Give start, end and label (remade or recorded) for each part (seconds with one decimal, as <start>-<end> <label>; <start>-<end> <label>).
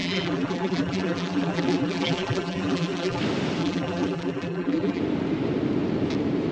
0.0-3.2 remade; 3.2-3.6 recorded; 3.6-5.0 remade; 5.0-6.5 recorded